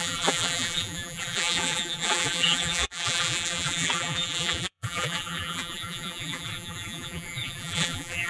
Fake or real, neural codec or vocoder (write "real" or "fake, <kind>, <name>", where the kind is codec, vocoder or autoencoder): fake, vocoder, BigVGAN v2